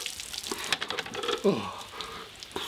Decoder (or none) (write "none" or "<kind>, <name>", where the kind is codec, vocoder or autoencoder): none